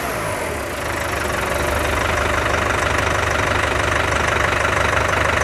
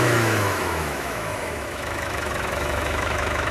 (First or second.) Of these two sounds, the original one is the first